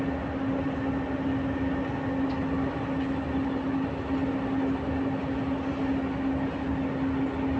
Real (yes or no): yes